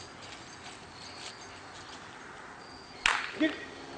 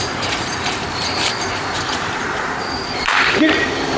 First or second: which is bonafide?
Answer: first